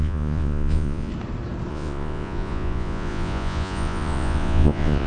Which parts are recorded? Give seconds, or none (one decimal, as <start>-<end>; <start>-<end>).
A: 1.1-1.7